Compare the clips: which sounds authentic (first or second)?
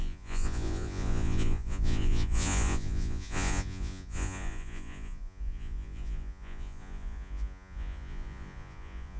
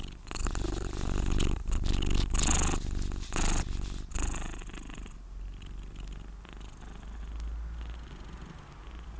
second